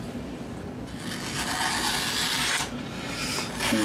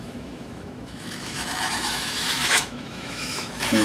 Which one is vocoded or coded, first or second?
second